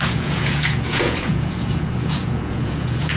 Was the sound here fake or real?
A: fake